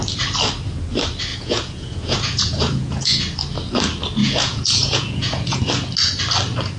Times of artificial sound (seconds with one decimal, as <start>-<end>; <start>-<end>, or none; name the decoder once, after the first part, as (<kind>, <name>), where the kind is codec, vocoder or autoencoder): 1.3-3.2 (vocoder, Vocos); 4.2-5.6